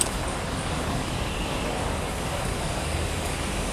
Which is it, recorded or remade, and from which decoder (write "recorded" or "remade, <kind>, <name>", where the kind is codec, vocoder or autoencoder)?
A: remade, codec, DAC